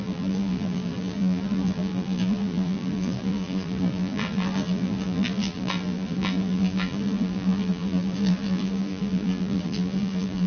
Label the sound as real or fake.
fake